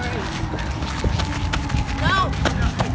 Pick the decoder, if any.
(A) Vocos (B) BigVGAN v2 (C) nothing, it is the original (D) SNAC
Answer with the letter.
C